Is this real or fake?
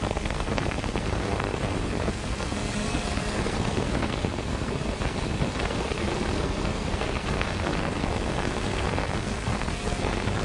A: fake